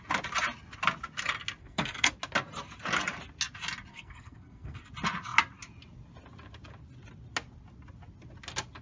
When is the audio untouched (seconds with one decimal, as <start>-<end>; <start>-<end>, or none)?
0.0-1.6; 2.1-3.9; 4.8-8.8